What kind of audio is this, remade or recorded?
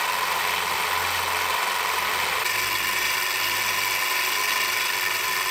recorded